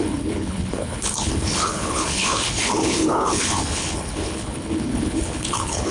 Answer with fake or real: fake